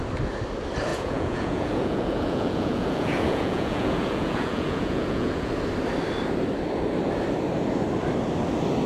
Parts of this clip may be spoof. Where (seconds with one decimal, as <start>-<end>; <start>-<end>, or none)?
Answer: 0.9-5.5